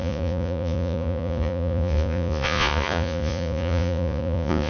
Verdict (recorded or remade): remade